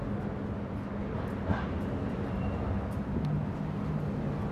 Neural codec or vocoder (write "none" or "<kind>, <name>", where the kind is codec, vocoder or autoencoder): none